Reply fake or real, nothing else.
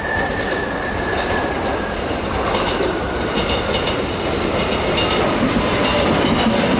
real